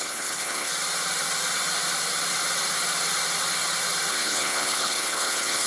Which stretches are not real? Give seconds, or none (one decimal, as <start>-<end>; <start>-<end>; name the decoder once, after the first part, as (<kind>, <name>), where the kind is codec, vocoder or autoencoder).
0.0-0.7 (codec, HILCodec); 4.1-5.7